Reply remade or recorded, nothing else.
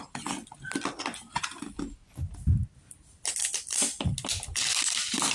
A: recorded